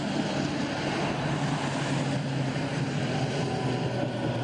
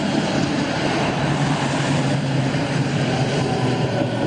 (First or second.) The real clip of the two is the first